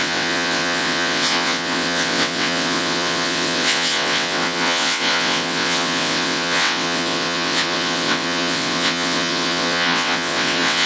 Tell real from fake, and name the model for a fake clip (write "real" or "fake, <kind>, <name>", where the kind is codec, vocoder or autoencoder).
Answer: fake, vocoder, WaveNeXt